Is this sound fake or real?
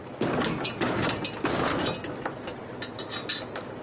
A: real